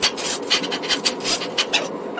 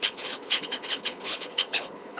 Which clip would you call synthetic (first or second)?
second